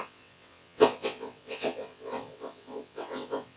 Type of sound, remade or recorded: remade